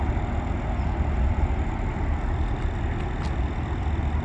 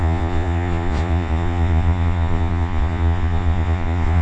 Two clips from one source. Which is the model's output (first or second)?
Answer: second